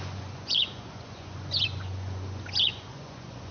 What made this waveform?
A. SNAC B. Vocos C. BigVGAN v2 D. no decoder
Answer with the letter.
B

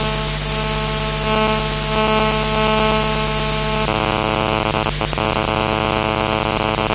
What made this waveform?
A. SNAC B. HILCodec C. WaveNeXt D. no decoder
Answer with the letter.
D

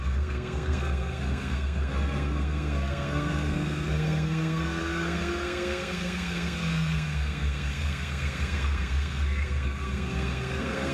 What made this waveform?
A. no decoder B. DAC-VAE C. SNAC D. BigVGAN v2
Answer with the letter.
C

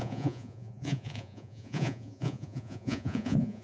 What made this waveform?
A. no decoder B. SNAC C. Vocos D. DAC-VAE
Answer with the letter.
C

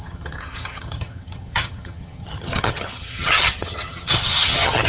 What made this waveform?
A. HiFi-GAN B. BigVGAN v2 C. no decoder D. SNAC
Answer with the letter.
A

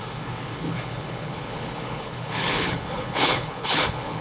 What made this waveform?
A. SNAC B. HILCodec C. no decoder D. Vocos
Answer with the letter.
B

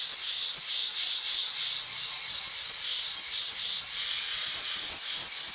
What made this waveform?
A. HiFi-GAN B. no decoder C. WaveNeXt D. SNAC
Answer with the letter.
B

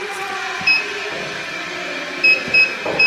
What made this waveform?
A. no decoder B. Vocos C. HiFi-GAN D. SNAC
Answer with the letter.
A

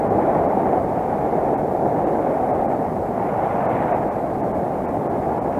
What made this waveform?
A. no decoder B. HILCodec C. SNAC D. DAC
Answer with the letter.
A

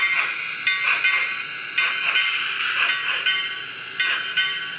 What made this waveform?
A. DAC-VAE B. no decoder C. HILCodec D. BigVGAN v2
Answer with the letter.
B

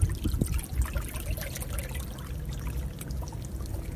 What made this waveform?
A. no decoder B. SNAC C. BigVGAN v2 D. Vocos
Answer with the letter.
A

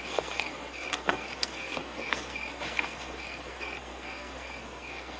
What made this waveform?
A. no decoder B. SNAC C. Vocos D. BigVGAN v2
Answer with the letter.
B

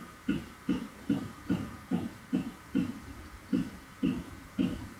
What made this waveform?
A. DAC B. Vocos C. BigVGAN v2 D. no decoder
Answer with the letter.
C